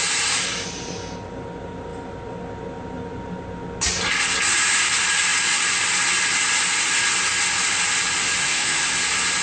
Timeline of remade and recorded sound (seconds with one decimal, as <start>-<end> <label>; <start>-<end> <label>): 0.0-8.4 recorded; 8.4-8.9 remade; 8.9-9.4 recorded